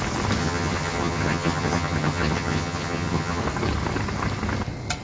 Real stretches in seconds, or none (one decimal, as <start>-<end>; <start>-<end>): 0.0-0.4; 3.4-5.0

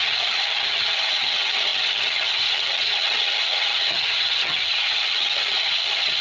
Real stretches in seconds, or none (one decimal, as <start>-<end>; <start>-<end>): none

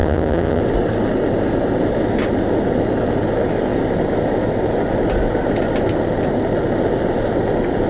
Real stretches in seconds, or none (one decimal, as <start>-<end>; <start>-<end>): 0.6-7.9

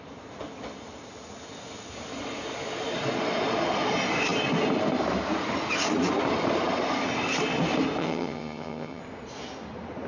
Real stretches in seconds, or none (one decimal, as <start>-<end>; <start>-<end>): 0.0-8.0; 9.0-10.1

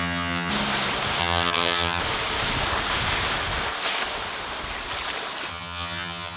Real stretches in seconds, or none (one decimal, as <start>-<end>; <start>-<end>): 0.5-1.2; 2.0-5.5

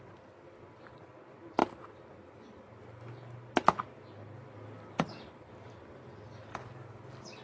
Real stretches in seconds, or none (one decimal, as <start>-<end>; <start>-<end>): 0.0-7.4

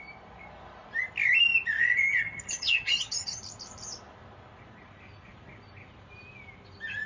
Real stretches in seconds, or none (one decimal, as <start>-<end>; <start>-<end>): 0.0-1.8; 3.4-7.1

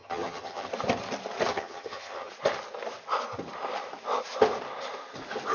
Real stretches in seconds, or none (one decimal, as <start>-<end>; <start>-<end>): 0.7-1.5; 2.3-5.5